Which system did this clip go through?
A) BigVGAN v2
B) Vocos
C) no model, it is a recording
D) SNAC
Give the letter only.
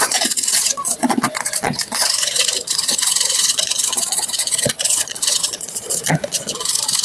B